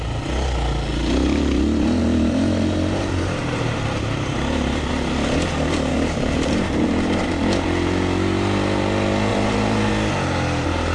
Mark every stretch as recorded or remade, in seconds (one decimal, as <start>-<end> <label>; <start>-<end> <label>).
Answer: 0.0-2.0 recorded; 2.0-4.9 remade; 4.9-5.9 recorded; 5.9-7.3 remade; 7.3-9.3 recorded; 9.3-9.9 remade; 9.9-10.9 recorded